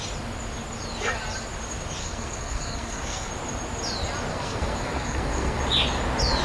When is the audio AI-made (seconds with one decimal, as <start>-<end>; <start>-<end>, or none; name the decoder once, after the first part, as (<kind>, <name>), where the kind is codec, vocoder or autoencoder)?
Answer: 2.0-3.3 (codec, SNAC); 4.3-5.6